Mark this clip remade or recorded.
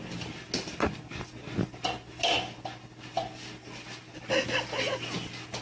recorded